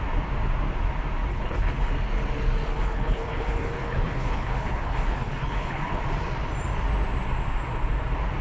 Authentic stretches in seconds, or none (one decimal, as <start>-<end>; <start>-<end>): 0.0-1.3; 1.9-2.7; 6.0-8.4